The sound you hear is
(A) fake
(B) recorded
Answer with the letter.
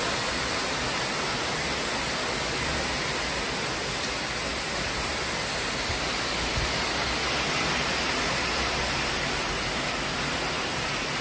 B